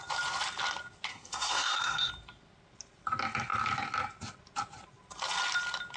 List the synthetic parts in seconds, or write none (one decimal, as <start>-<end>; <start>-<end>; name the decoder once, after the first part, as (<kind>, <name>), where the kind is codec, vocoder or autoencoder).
1.1-2.1 (codec, SNAC)